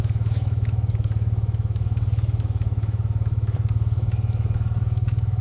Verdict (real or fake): fake